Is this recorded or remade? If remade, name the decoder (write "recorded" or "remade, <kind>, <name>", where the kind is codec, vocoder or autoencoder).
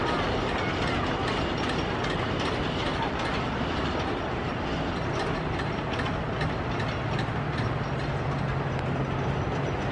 recorded